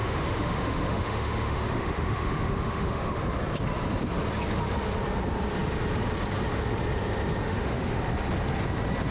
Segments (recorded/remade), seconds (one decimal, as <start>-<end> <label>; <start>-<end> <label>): 0.0-3.2 remade; 3.2-7.4 recorded; 7.4-8.0 remade; 8.0-9.1 recorded